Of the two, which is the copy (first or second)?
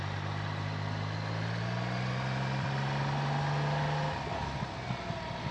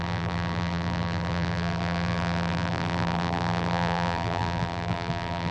second